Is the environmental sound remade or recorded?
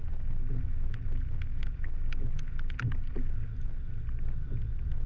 recorded